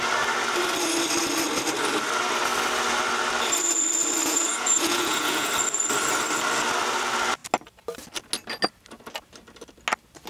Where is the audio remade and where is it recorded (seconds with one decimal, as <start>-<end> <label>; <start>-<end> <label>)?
0.0-4.2 recorded; 4.2-5.5 remade; 5.5-10.3 recorded